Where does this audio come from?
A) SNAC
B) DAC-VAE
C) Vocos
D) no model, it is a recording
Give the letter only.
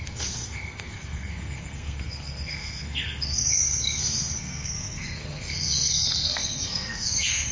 A